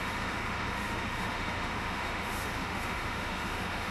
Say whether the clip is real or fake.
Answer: fake